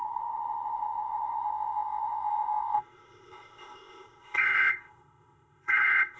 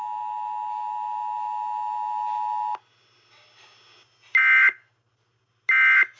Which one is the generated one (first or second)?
first